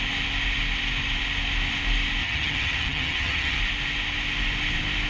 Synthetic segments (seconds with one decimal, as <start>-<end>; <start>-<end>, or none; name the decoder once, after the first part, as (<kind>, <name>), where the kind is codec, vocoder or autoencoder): 2.2-3.6 (vocoder, HiFi-GAN)